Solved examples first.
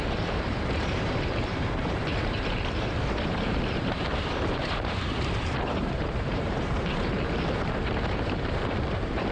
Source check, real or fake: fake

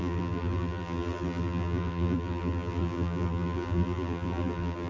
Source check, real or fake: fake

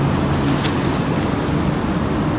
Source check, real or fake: real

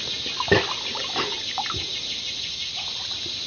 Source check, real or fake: real